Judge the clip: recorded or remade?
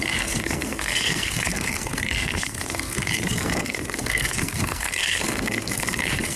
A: remade